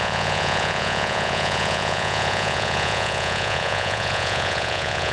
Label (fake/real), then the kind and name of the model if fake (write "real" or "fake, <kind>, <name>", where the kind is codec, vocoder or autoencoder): fake, vocoder, Vocos